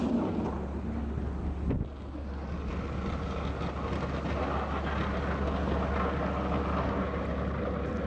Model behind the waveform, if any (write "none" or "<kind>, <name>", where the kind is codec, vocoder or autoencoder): none